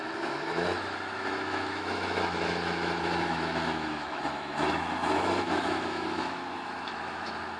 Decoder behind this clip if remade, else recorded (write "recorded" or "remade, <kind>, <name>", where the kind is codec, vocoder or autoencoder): remade, autoencoder, DAC-VAE